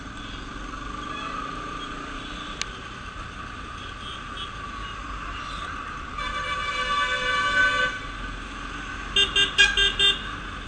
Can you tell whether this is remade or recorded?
recorded